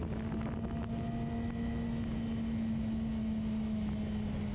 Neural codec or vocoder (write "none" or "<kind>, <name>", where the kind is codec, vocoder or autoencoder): none